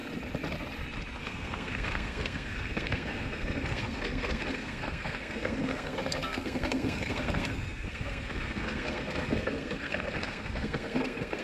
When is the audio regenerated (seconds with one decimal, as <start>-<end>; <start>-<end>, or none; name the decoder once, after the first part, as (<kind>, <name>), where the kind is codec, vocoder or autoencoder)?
1.2-11.4 (codec, SNAC)